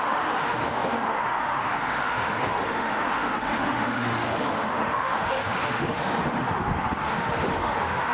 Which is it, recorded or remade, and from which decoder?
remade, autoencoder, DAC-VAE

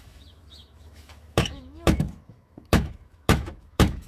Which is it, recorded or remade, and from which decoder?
remade, autoencoder, DAC-VAE